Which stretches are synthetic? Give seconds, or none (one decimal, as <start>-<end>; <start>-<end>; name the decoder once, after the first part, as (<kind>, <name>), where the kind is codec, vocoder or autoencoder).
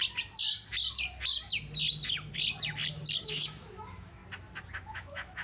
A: 3.2-4.2 (autoencoder, DAC-VAE); 4.7-5.4